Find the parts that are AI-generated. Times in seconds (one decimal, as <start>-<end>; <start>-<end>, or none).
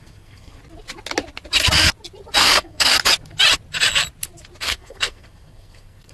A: 0.0-0.6; 2.4-2.9; 4.6-6.1